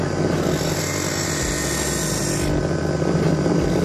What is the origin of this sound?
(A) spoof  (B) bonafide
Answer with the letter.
B